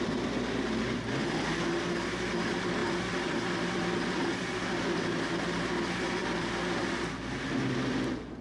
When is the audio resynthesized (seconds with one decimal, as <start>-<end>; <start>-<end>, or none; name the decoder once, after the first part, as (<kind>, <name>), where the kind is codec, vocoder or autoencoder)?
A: 2.8-5.3 (vocoder, BigVGAN v2)